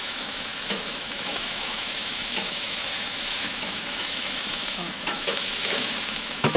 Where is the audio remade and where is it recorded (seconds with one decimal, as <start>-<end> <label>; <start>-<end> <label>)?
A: 0.0-6.6 remade